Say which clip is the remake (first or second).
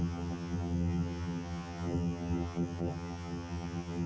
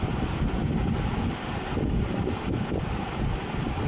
first